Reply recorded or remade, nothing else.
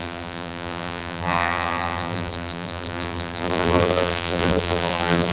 remade